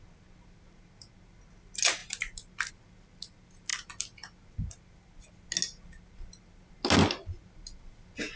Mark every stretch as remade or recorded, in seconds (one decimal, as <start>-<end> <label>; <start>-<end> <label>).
0.0-8.4 recorded

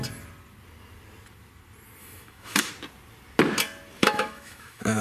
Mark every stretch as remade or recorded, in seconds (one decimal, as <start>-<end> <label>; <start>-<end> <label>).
0.0-2.0 recorded; 2.0-2.7 remade; 2.7-4.0 recorded; 4.0-5.0 remade